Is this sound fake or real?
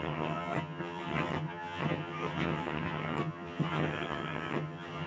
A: fake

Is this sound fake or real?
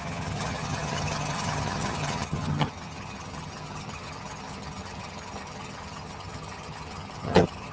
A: fake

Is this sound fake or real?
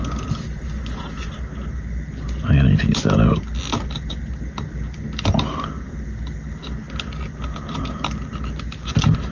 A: real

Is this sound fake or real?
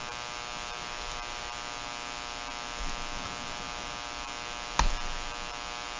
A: real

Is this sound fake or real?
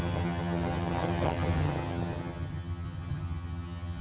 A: fake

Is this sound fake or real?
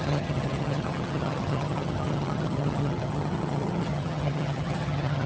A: fake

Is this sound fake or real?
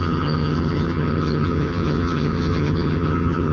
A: fake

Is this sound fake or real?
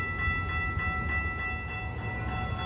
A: real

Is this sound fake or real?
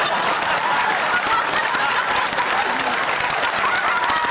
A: real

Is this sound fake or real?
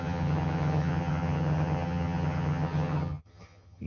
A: fake